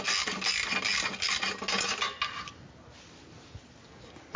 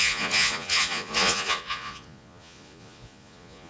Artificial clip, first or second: second